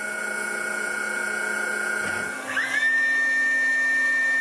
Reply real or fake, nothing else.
real